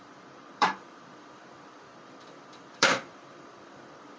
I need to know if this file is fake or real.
fake